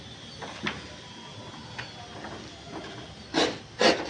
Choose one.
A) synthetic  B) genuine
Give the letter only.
B